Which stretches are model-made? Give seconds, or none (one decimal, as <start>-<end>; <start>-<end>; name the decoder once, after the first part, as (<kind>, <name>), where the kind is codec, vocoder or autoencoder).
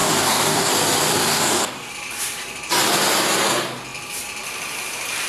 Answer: 0.0-0.7 (codec, DAC); 1.3-1.9